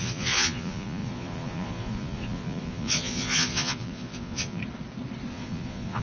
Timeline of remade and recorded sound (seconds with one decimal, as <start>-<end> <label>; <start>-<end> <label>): 0.0-4.6 remade; 4.6-5.3 recorded; 5.3-6.0 remade

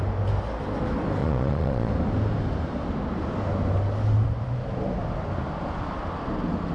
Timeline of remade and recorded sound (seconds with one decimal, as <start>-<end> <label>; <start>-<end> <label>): 0.0-1.2 recorded; 1.2-1.9 remade; 1.9-6.7 recorded

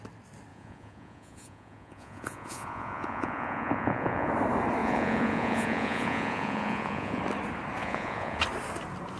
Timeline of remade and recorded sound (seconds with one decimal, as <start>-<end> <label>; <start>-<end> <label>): 0.0-0.5 recorded; 0.5-4.3 remade; 4.3-4.8 recorded; 4.8-7.2 remade; 7.2-7.8 recorded; 7.8-8.4 remade; 8.4-9.2 recorded

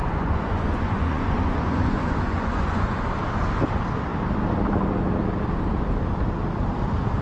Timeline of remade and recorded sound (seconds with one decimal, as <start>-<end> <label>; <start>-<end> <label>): 0.0-3.0 remade; 3.0-7.2 recorded